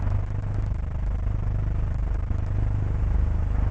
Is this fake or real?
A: real